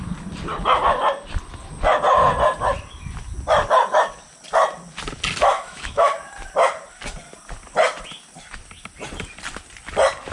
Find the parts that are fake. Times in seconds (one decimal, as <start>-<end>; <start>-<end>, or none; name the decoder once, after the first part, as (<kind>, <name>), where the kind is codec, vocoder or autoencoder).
5.5-6.1 (autoencoder, DAC-VAE)